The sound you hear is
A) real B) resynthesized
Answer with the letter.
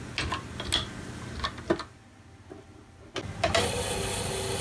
A